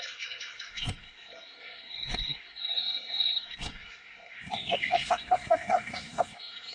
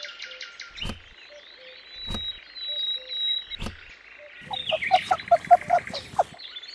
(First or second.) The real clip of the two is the second